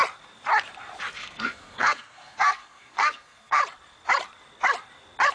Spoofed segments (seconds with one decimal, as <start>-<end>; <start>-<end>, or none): 1.1-3.6